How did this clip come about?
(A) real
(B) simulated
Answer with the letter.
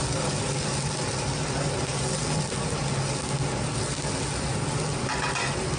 A